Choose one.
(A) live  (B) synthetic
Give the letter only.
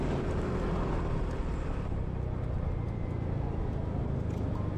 A